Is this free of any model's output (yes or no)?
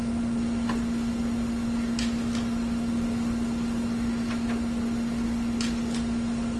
yes